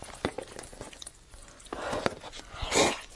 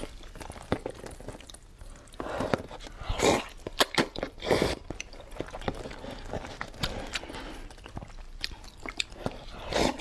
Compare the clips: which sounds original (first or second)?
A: second